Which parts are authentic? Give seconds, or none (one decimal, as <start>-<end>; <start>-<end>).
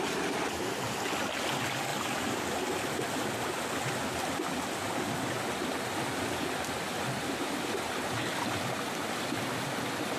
0.0-1.9; 2.4-10.2